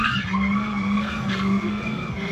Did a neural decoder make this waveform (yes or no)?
yes